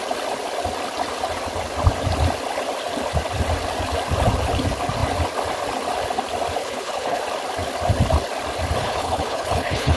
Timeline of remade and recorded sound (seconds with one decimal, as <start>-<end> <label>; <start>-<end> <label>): 0.0-6.6 recorded; 6.6-7.2 remade; 7.2-8.8 recorded; 8.8-10.0 remade